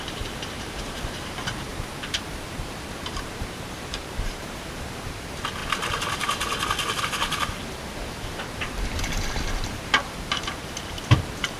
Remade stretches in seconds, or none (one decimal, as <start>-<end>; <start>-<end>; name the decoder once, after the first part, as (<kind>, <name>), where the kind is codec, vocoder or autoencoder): 0.0-1.7 (vocoder, BigVGAN v2); 2.5-5.6; 7.0-11.6